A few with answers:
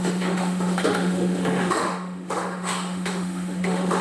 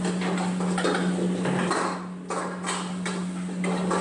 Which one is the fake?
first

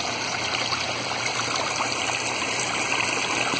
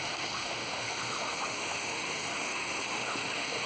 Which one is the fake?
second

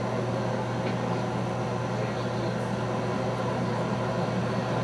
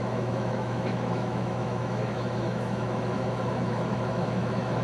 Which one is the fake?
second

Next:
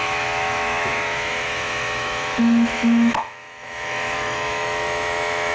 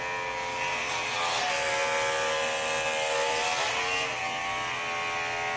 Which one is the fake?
first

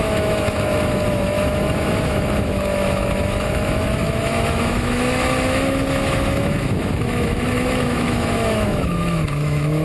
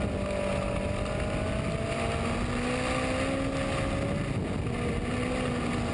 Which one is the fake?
first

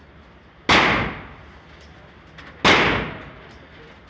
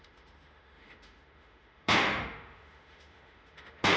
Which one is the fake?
second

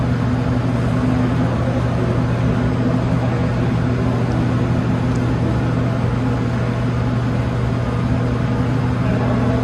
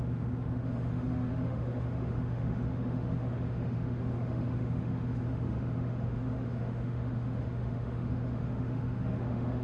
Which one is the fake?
second